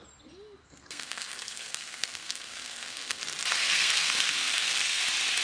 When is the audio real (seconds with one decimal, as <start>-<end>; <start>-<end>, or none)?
0.0-0.6; 3.2-3.6; 5.0-5.4